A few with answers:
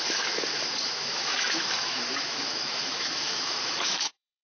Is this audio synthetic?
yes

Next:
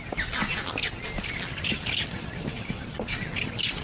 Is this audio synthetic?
no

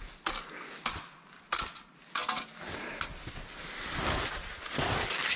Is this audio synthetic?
no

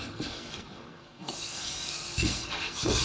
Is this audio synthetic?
yes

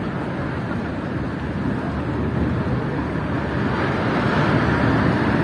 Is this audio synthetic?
no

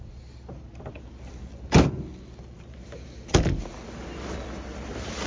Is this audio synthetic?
no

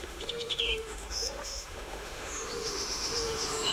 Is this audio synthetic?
yes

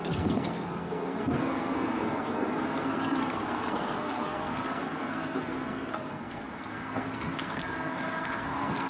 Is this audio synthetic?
yes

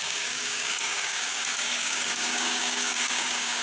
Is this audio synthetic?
yes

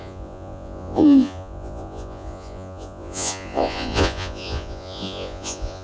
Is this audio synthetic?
yes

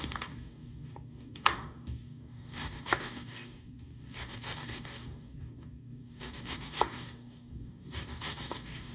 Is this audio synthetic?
yes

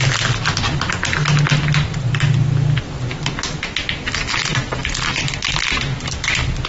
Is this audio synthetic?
no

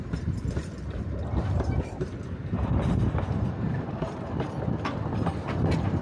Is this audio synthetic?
yes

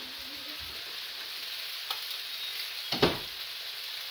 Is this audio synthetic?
no